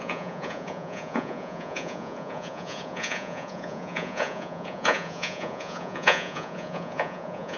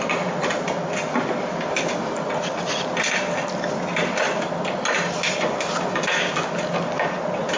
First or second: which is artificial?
first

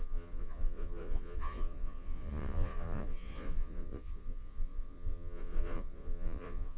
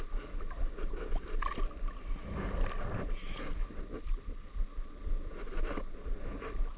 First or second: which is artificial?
first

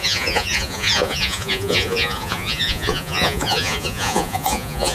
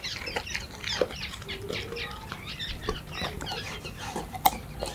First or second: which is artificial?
first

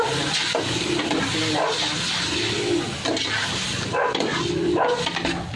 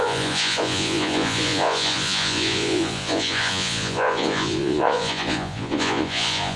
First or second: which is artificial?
second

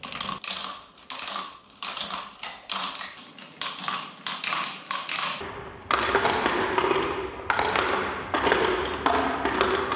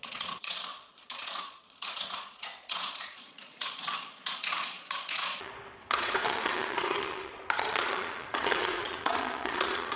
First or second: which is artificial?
second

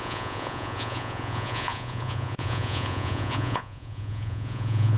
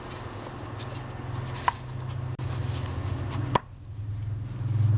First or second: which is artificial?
first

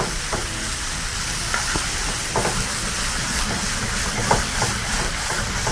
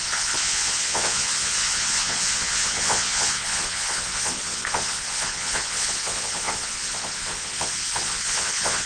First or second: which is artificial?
second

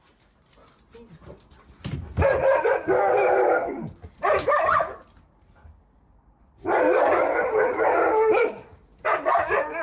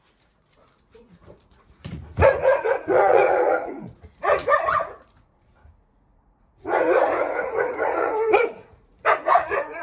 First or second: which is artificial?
second